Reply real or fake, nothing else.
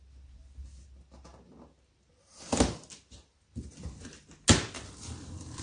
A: real